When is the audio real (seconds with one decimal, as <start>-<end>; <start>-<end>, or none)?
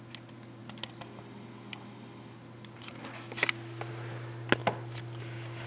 0.0-5.7